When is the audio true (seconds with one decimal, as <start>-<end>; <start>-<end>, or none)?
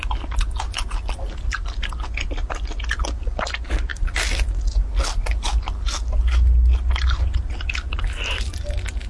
0.0-9.1